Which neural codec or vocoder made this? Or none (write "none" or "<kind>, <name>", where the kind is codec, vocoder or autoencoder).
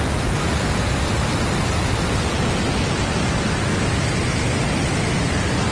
none